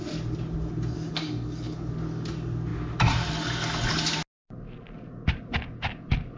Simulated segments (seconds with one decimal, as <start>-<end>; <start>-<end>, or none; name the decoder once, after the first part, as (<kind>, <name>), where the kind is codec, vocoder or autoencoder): 1.2-1.9 (codec, DAC)